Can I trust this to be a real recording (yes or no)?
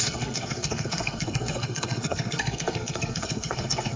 no